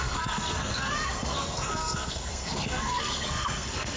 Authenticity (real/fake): fake